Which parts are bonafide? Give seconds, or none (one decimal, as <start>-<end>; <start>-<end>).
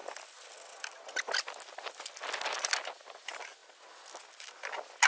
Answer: 0.0-5.1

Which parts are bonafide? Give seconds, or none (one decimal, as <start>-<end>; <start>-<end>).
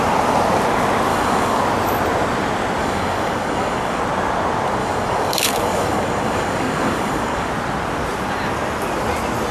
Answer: 0.0-1.1; 1.6-2.8; 4.0-4.8; 7.5-9.5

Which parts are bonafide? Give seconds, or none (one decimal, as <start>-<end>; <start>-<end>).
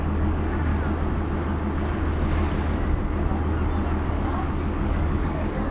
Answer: 0.7-4.1